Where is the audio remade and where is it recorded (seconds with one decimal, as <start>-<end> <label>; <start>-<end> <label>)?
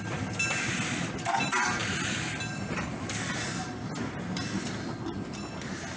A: 0.0-6.0 recorded